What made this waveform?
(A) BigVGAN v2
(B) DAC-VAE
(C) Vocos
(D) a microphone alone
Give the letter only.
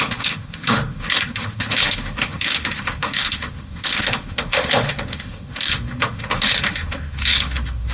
B